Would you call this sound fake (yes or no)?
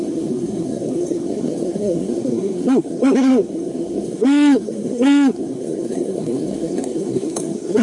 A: yes